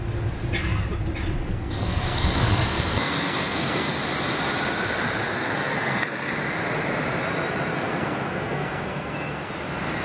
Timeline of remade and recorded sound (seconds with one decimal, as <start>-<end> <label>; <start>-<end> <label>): 0.0-1.5 recorded; 1.5-3.9 remade; 3.9-5.3 recorded; 5.3-6.3 remade; 6.3-7.7 recorded; 7.7-9.5 remade; 9.5-10.0 recorded